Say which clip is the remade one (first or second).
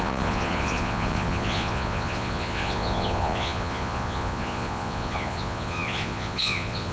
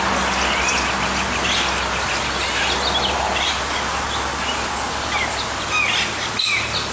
first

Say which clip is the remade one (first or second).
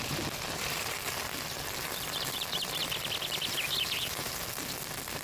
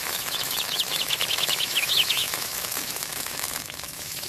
second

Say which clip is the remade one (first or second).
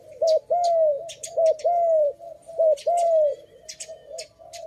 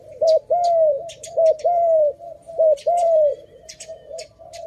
second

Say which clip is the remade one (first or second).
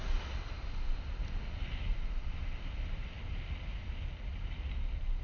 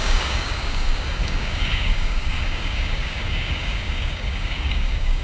second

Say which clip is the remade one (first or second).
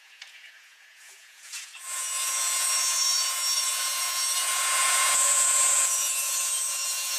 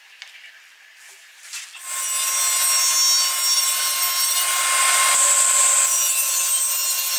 first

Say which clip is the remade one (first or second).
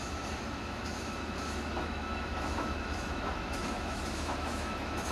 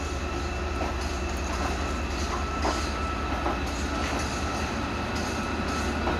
first